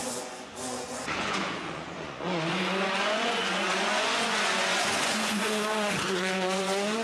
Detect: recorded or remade remade